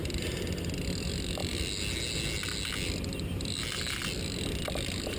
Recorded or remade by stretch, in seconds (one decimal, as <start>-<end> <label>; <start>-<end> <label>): 0.0-5.2 recorded